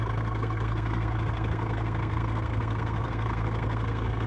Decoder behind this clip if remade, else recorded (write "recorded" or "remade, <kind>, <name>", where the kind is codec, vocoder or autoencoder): remade, codec, SNAC